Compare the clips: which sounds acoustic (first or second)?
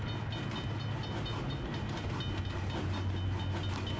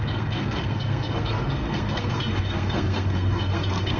first